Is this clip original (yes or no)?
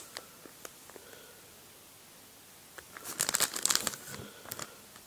yes